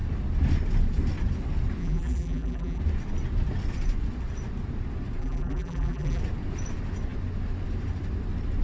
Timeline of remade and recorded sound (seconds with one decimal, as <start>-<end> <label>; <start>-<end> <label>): 0.0-1.8 recorded; 1.8-2.8 remade; 2.8-5.2 recorded; 5.2-6.2 remade; 6.2-8.6 recorded